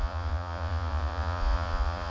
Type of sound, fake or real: fake